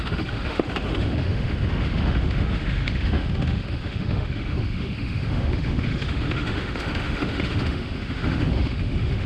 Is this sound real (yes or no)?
no